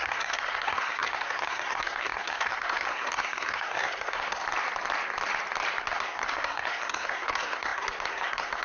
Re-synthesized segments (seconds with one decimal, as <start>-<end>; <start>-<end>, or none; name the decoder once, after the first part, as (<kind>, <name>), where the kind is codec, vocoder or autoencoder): 0.0-4.4 (codec, SNAC); 5.8-8.6